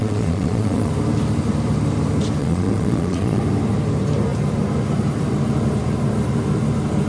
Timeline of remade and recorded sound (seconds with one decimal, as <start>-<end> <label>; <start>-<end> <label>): 0.0-0.9 remade; 0.9-2.4 recorded; 2.4-3.4 remade; 3.4-7.1 recorded